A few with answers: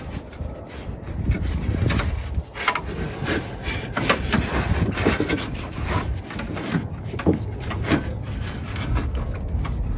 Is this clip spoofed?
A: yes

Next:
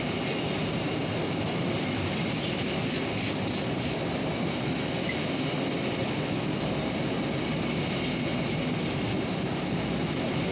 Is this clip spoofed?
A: no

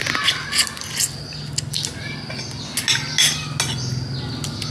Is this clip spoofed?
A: no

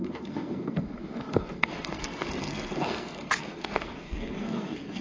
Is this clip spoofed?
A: yes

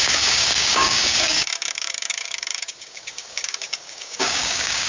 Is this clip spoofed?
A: yes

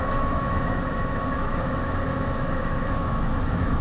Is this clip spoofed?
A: yes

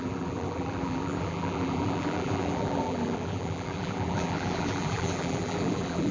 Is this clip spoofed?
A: yes